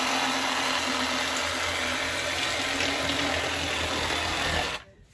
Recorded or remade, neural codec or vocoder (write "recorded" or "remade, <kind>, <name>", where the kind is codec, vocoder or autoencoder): recorded